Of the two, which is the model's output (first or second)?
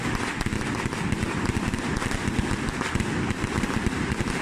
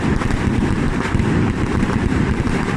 second